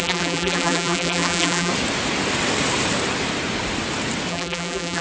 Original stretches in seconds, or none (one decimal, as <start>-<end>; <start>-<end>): 1.7-4.3